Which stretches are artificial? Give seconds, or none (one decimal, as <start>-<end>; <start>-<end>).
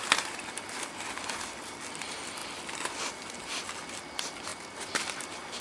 0.0-4.5